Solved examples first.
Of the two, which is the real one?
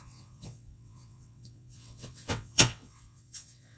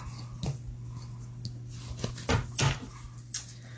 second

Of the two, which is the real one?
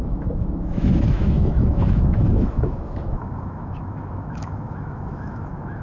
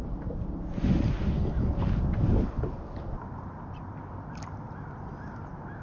second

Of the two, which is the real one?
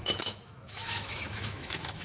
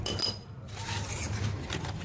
second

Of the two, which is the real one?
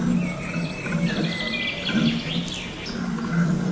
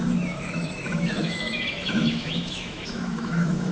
first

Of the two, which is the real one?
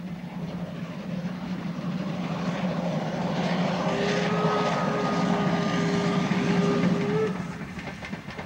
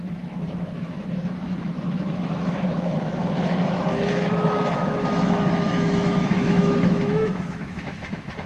first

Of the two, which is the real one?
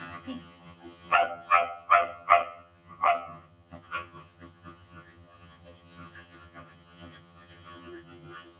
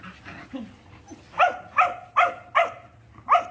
second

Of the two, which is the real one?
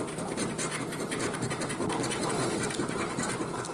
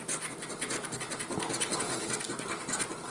second